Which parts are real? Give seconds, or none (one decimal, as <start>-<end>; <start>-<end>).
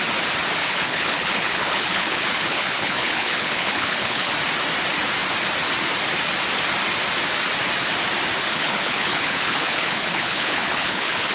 0.0-0.6; 4.3-8.5